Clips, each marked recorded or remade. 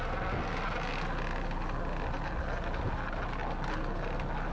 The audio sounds recorded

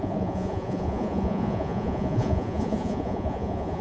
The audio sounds remade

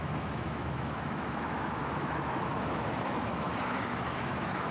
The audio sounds remade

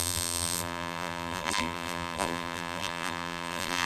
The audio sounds remade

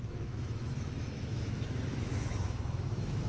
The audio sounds remade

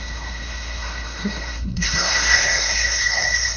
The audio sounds remade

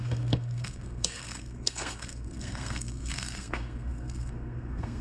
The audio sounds remade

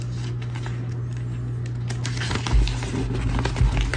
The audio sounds recorded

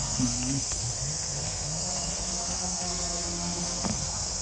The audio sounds remade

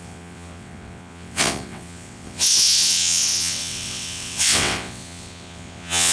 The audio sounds remade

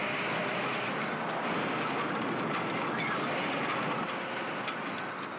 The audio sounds recorded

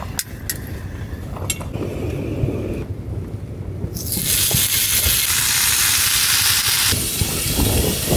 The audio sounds recorded